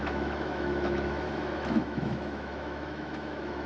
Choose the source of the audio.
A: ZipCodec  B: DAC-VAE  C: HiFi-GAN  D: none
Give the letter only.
B